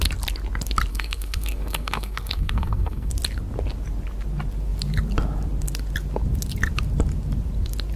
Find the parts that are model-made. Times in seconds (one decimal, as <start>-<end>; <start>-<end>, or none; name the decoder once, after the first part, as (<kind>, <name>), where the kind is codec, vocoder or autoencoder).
0.9-3.1 (codec, SNAC)